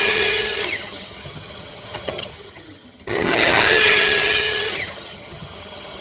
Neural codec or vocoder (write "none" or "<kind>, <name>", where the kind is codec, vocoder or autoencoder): vocoder, HiFi-GAN